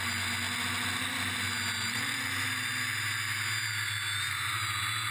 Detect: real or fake real